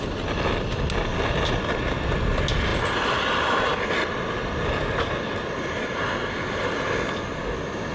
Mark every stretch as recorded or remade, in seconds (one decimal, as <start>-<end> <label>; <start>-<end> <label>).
0.0-7.9 recorded